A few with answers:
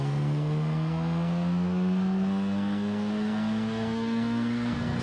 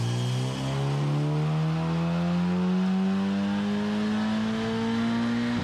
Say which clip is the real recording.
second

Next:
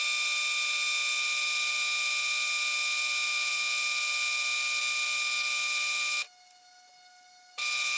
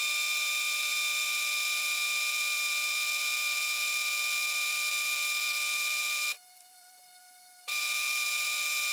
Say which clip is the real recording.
first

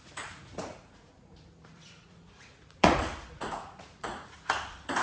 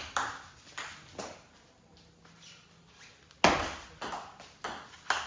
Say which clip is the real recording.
second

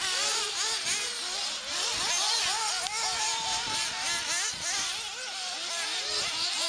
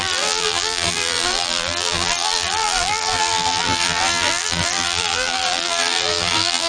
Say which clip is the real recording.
first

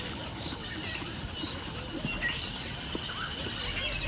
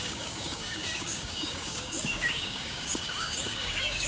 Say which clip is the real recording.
first